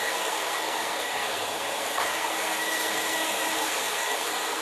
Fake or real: fake